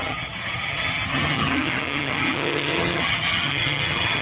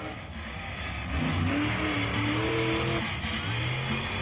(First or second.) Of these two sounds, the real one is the second